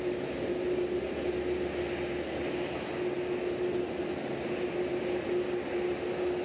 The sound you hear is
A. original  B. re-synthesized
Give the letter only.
A